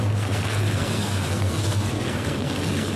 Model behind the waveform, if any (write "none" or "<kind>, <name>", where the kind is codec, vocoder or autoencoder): codec, SNAC